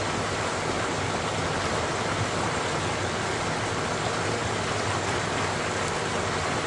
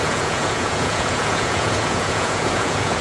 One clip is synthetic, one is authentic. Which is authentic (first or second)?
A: first